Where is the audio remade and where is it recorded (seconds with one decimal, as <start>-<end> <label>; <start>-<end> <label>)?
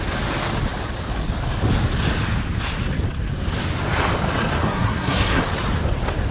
0.0-4.6 recorded; 4.6-5.4 remade; 5.4-6.3 recorded